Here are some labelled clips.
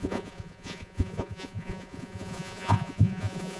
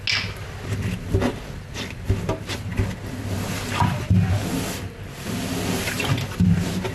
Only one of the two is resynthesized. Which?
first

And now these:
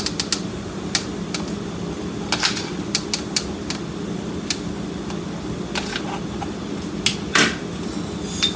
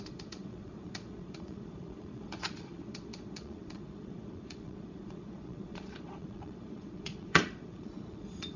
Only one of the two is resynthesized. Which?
second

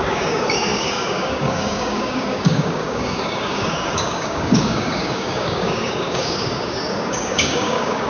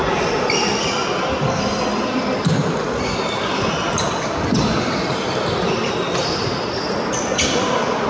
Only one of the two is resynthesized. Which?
first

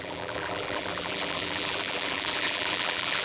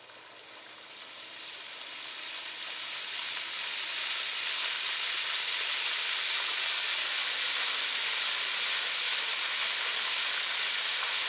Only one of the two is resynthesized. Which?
first